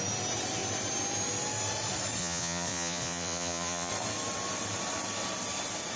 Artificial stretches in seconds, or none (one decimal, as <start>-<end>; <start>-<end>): 2.2-3.9